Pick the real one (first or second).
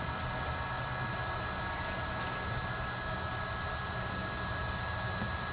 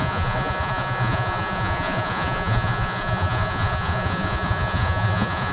first